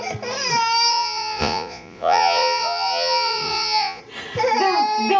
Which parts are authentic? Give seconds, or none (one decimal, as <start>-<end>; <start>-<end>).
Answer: 0.0-0.9; 4.0-5.2